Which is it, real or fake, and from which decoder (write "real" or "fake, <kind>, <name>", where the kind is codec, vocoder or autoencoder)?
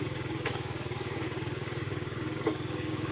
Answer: fake, codec, DAC